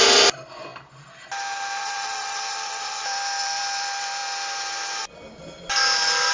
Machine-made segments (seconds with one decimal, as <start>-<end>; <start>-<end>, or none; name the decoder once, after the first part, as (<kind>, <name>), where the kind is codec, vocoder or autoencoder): 0.0-0.7 (vocoder, BigVGAN v2); 1.8-4.2